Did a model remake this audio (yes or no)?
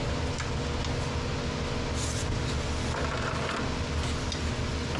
no